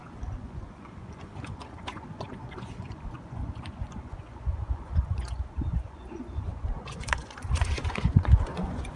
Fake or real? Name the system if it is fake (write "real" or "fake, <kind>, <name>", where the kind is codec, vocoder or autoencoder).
fake, vocoder, Vocos